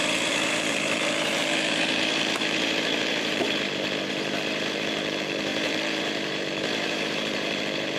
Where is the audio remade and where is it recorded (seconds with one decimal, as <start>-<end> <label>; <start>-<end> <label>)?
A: 0.0-8.0 remade